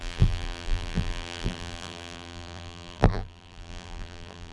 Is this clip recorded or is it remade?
remade